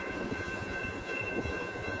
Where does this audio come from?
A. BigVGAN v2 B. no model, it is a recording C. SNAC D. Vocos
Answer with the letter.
D